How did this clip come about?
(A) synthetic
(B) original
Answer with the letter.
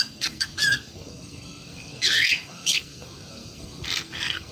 A